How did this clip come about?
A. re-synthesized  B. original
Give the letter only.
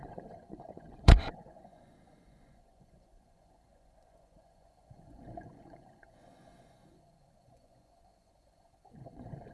A